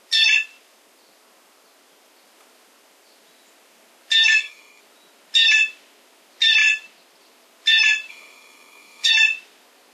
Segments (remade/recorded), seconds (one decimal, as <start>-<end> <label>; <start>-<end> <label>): 0.0-4.3 recorded; 4.3-4.8 remade; 4.8-8.1 recorded; 8.1-9.1 remade; 9.1-9.9 recorded